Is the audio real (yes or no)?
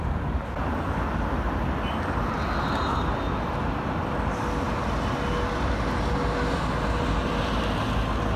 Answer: yes